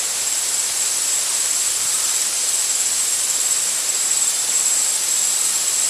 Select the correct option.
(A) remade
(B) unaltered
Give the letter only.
A